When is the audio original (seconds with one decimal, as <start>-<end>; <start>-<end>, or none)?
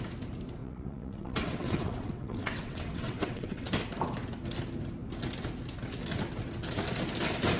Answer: 0.0-0.6; 3.7-7.6